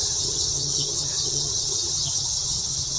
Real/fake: fake